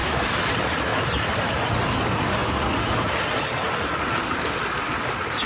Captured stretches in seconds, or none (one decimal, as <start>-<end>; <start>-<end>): 0.5-5.5